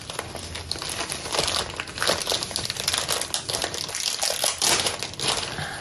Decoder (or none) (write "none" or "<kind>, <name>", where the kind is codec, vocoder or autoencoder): none